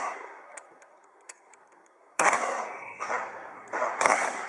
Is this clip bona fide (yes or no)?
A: no